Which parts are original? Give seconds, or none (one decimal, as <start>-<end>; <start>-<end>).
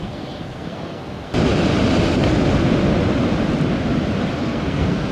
1.3-4.4